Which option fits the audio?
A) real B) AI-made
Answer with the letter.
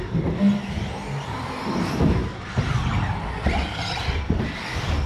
A